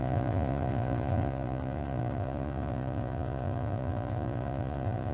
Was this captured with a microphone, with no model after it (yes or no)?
no